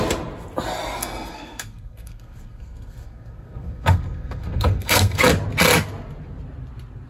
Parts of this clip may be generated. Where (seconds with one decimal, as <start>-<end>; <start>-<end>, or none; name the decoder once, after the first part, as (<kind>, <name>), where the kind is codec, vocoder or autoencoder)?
1.0-5.2 (codec, SNAC)